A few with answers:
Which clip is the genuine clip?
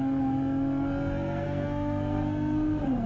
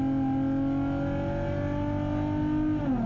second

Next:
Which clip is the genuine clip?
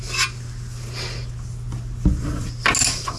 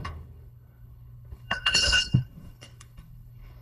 first